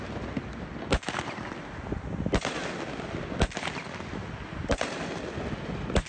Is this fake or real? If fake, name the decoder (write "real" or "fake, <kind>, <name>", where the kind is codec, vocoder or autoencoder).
real